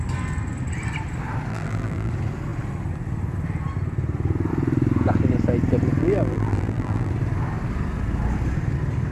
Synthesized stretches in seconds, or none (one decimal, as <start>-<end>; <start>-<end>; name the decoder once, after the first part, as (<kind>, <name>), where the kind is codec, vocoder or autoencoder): 1.5-2.1 (vocoder, BigVGAN v2); 6.0-7.1